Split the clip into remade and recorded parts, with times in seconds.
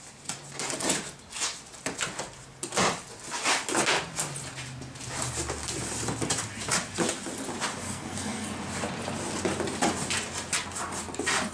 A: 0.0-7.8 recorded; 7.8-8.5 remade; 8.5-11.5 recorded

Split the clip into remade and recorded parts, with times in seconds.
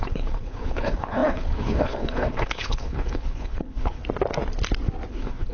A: 0.0-4.0 remade; 4.0-5.1 recorded; 5.1-5.5 remade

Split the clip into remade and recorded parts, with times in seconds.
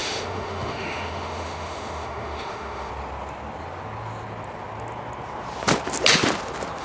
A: 0.0-2.9 remade; 2.9-6.8 recorded